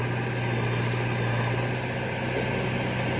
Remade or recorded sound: recorded